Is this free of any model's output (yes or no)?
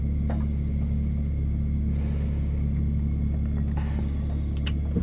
yes